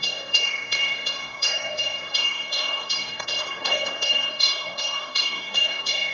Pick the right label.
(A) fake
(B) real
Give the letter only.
A